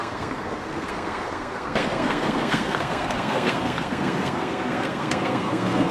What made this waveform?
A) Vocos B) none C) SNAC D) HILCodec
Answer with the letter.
C